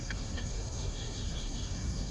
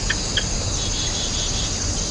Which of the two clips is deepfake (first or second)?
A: first